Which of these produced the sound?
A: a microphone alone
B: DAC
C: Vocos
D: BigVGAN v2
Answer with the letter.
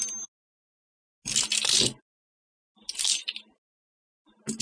A